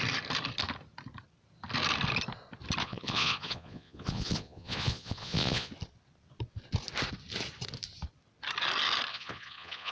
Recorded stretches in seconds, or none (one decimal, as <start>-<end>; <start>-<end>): 0.0-2.8; 5.7-9.1